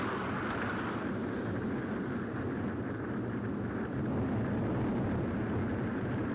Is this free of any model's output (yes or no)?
yes